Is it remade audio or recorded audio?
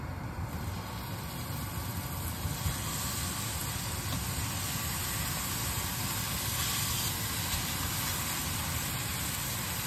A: recorded